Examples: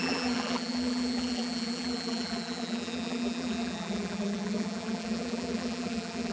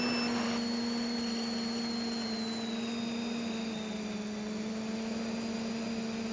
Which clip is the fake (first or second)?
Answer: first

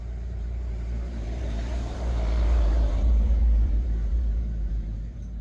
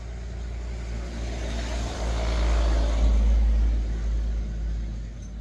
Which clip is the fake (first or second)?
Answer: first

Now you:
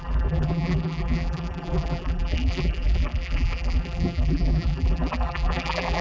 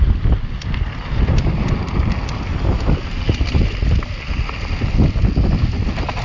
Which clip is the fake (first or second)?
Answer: first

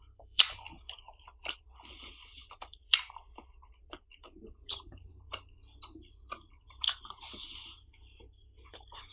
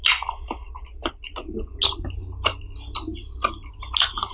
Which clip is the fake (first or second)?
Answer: first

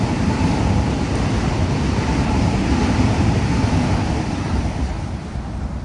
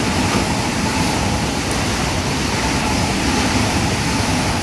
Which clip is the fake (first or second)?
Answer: first